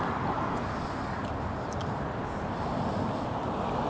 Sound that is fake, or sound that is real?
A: real